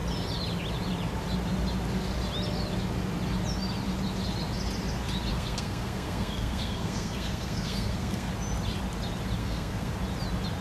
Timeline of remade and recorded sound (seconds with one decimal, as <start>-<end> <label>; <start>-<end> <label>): 0.0-5.3 recorded; 5.3-8.3 remade; 8.3-9.4 recorded; 9.4-9.9 remade; 9.9-10.6 recorded